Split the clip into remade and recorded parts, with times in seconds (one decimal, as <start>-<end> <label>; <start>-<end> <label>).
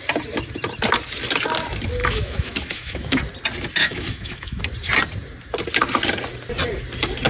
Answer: 0.0-2.0 recorded; 2.0-3.2 remade; 3.2-3.8 recorded; 3.8-4.6 remade; 4.6-7.3 recorded